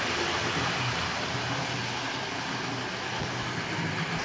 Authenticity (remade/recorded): recorded